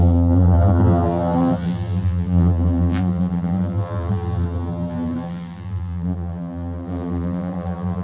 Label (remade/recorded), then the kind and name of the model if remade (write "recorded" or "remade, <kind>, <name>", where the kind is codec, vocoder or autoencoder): remade, vocoder, BigVGAN v2